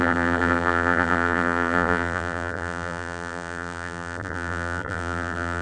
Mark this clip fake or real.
fake